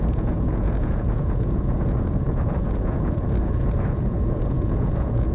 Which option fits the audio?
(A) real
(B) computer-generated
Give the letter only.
B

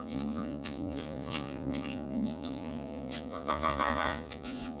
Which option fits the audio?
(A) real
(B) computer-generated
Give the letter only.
B